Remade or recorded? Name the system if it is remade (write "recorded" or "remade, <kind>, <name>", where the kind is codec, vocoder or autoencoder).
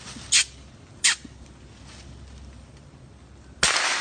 recorded